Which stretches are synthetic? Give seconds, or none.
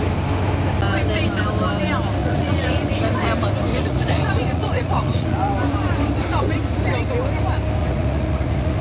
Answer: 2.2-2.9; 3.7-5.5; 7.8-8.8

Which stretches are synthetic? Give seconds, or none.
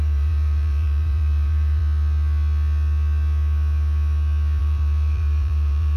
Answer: 0.0-1.8; 4.6-6.0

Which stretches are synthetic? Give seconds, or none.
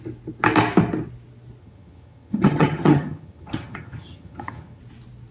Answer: 1.6-4.8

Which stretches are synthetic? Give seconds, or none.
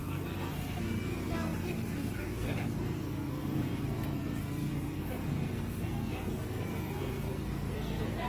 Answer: 0.0-8.3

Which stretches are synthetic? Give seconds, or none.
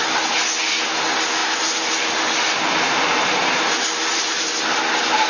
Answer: 1.4-4.6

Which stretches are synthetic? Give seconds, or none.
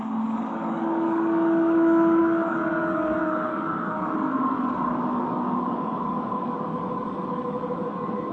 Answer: 0.0-8.3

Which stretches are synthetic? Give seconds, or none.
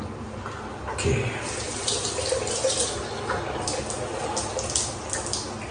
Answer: none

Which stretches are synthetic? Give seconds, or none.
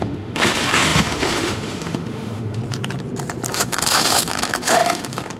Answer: 0.0-2.6; 3.5-5.4